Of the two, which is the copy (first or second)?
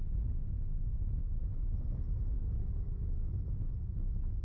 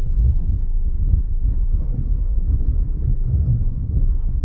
second